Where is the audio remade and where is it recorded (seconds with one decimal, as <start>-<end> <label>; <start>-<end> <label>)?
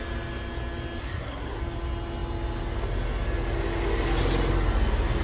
0.0-1.0 recorded; 1.0-1.6 remade; 1.6-5.2 recorded